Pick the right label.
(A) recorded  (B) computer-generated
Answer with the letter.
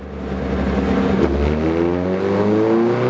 A